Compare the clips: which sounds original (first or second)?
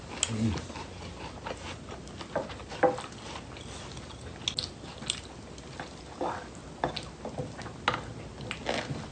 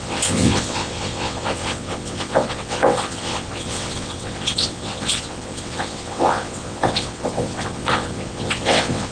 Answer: first